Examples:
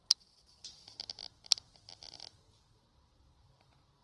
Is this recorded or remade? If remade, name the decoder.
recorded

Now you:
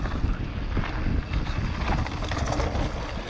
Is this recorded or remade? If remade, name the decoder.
recorded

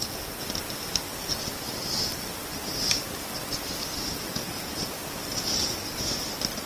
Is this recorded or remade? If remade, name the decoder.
recorded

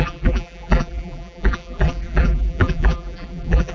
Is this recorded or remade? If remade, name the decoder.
remade, vocoder, BigVGAN v2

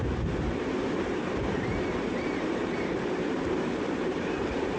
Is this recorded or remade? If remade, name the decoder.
remade, vocoder, BigVGAN v2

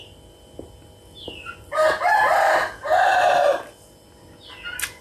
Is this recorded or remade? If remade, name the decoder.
recorded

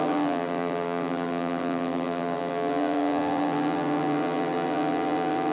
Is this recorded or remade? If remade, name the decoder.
remade, vocoder, BigVGAN v2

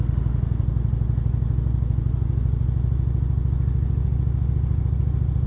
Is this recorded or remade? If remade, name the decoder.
recorded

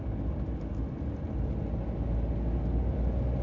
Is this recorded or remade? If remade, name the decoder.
recorded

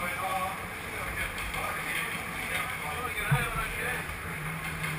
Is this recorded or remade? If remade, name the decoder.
remade, vocoder, BigVGAN v2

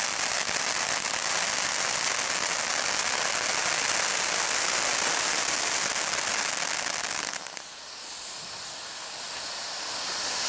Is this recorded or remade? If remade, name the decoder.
recorded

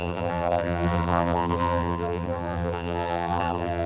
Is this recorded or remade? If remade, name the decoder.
remade, vocoder, BigVGAN v2